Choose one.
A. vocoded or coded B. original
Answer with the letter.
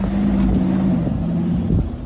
B